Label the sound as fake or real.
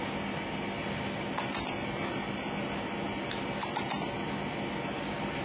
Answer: real